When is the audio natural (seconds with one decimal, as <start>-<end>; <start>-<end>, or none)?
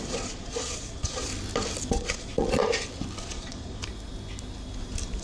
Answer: 1.3-1.9; 2.6-3.2; 3.8-5.2